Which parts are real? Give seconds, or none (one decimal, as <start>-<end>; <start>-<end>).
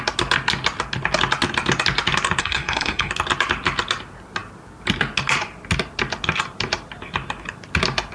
0.0-2.4; 3.1-8.1